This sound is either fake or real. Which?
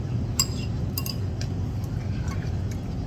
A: real